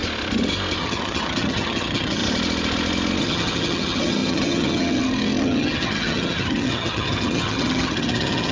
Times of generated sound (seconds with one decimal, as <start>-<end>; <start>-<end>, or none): 0.8-2.2; 3.2-8.5